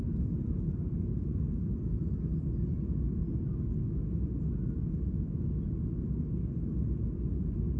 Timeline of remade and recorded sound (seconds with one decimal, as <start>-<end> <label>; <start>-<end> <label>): 0.0-7.8 recorded